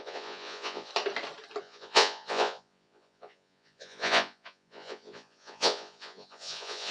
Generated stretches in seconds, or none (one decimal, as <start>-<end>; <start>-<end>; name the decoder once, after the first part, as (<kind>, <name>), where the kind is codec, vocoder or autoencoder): 0.0-0.9 (vocoder, Vocos); 1.6-6.9